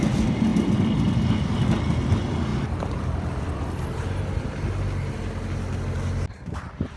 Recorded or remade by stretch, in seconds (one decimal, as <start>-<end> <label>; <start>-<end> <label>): 0.0-7.0 recorded